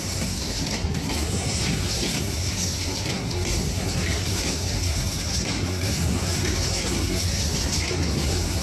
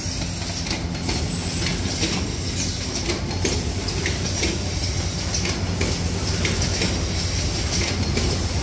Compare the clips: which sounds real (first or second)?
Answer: second